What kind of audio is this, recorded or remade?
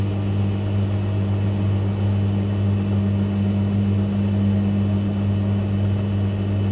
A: recorded